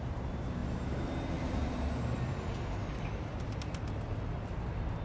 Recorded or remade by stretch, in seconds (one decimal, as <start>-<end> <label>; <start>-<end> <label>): 0.0-5.0 recorded